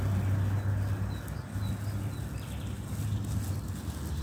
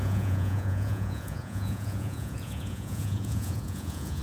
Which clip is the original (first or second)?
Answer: first